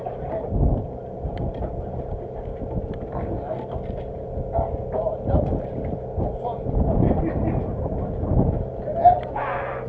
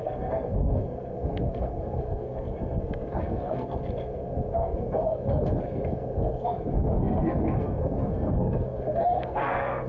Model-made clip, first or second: second